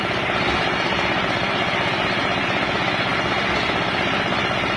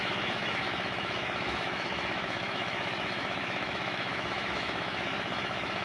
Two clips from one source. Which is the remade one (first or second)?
second